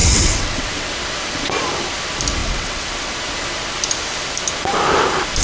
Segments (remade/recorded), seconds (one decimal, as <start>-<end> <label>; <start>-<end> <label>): 0.0-0.9 remade; 0.9-2.4 recorded; 2.4-3.1 remade; 3.1-5.4 recorded